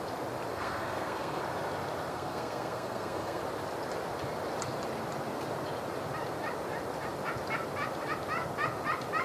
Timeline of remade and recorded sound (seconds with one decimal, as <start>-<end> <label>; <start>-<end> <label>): 0.0-0.5 recorded; 0.5-1.4 remade; 1.4-2.1 recorded; 2.1-3.4 remade; 3.4-9.2 recorded

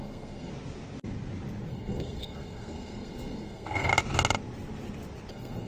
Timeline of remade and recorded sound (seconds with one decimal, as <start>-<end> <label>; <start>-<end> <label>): 0.0-0.5 remade; 0.5-1.7 recorded; 1.7-3.9 remade; 3.9-5.3 recorded; 5.3-5.7 remade

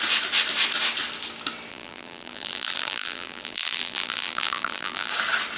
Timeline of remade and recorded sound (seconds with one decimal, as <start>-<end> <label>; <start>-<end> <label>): 0.0-1.7 recorded; 1.7-5.1 remade; 5.1-5.6 recorded

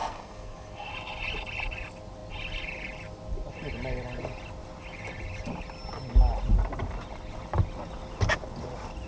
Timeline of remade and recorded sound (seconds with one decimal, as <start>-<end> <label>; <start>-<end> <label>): 0.0-0.9 remade; 0.9-9.1 recorded

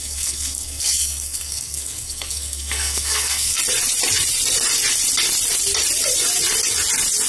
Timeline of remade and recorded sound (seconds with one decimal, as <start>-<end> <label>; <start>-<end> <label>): 0.0-3.6 remade; 3.6-7.3 recorded